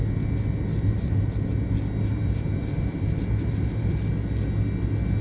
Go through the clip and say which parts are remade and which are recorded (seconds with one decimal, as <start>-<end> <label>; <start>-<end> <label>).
0.0-0.7 recorded; 0.7-1.5 remade; 1.5-2.1 recorded; 2.1-3.9 remade; 3.9-5.2 recorded

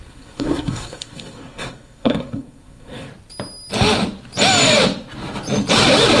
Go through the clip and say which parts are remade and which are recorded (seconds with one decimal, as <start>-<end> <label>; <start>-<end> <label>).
0.0-3.1 remade; 3.1-6.2 recorded

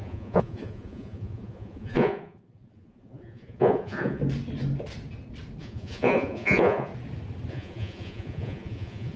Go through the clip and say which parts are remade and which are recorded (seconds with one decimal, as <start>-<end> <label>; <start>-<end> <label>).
0.0-4.2 remade; 4.2-5.6 recorded; 5.6-6.9 remade; 6.9-7.5 recorded; 7.5-9.2 remade

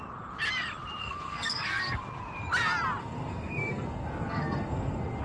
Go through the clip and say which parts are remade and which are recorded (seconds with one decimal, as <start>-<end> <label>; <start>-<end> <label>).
0.0-1.0 recorded; 1.0-2.0 remade; 2.0-3.0 recorded; 3.0-5.2 remade

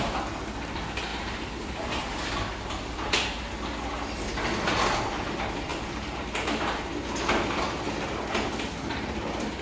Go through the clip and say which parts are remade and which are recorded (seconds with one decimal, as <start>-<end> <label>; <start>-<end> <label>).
0.0-1.1 recorded; 1.1-1.8 remade; 1.8-5.7 recorded; 5.7-6.9 remade; 6.9-9.6 recorded